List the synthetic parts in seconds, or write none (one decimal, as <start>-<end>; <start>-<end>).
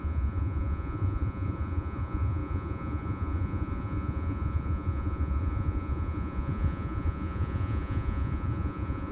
0.0-9.1